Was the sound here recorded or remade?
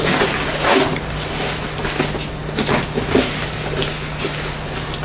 recorded